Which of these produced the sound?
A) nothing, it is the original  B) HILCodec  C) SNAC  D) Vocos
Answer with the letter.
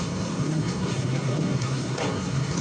C